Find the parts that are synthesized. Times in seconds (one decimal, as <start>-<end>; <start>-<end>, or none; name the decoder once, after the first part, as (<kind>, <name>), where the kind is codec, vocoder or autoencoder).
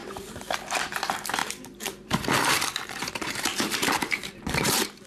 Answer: 0.0-5.1 (vocoder, BigVGAN v2)